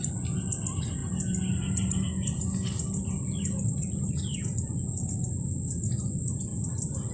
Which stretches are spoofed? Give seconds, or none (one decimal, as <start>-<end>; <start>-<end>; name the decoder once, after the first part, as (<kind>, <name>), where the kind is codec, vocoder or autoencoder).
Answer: none